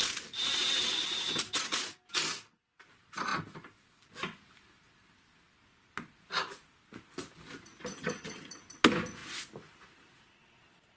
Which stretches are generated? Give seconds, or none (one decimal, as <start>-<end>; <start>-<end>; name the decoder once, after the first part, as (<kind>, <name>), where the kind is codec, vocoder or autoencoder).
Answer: 7.9-8.6 (vocoder, HiFi-GAN)